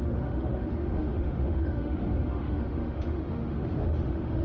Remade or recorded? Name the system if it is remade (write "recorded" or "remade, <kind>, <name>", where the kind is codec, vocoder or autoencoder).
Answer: remade, autoencoder, DAC-VAE